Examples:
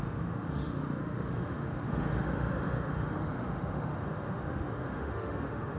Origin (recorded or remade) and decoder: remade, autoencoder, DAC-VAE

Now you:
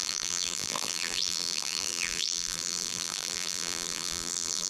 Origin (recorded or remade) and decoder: remade, vocoder, BigVGAN v2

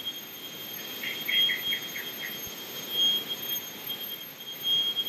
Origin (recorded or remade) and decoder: recorded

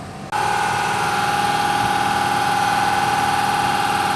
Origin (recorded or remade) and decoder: recorded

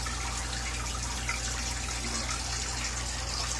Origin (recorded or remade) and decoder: recorded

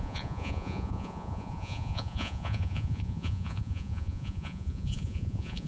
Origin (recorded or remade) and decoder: remade, vocoder, Vocos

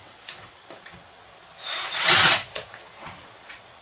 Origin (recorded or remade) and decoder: remade, vocoder, WaveNeXt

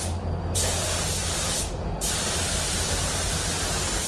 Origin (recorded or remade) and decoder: recorded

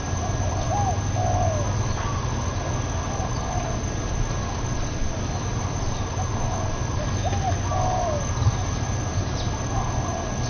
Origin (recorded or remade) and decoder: recorded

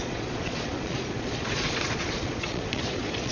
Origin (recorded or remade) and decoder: remade, vocoder, Vocos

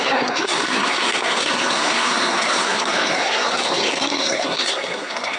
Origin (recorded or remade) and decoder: remade, codec, SNAC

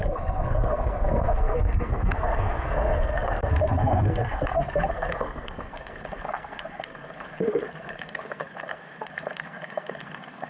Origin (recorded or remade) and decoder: remade, codec, SNAC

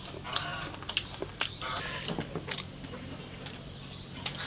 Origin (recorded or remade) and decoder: recorded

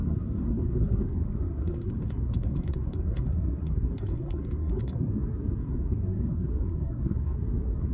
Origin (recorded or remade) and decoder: remade, codec, SNAC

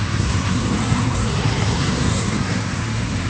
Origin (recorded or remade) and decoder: remade, codec, SNAC